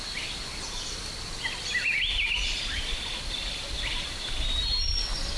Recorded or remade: recorded